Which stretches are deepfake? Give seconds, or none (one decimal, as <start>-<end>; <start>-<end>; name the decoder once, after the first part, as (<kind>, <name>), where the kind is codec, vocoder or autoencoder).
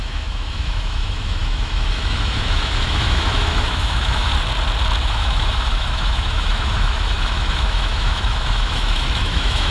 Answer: 0.0-4.3 (autoencoder, DAC-VAE); 5.0-9.7